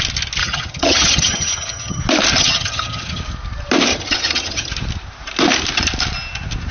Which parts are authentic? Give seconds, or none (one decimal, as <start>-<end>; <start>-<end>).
0.0-0.4; 2.0-2.4; 3.2-3.9; 4.7-6.7